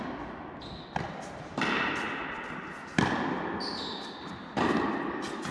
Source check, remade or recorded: recorded